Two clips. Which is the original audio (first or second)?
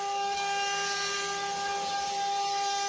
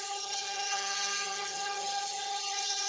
first